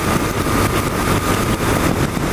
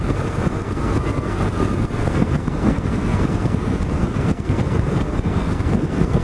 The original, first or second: first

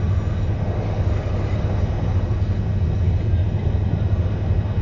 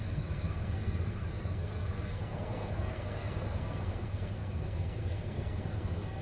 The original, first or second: first